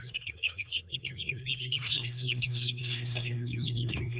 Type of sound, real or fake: fake